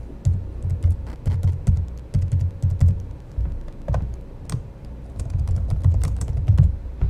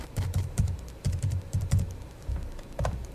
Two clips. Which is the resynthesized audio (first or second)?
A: second